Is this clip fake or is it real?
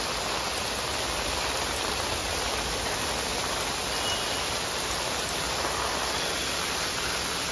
real